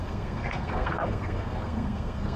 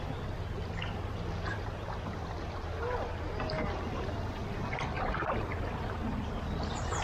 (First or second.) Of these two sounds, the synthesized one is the first